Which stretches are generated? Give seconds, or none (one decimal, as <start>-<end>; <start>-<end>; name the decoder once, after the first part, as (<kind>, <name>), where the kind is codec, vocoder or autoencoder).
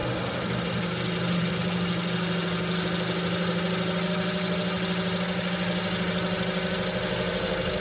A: none